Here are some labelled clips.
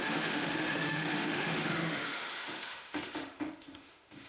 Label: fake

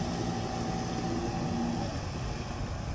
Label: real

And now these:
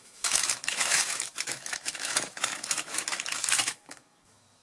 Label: fake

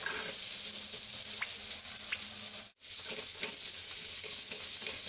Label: real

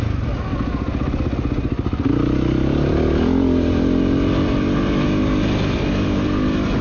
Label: real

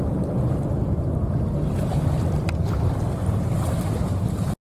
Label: real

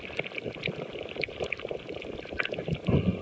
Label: real